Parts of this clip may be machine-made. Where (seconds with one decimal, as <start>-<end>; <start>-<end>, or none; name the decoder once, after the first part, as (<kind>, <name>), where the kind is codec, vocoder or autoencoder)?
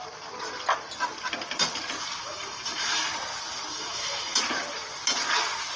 2.2-3.0 (autoencoder, DAC-VAE); 3.7-4.4